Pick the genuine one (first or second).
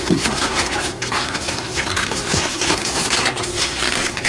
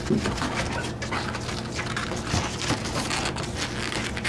second